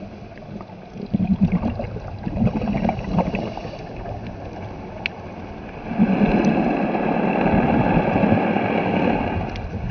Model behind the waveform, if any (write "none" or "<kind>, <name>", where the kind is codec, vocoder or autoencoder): none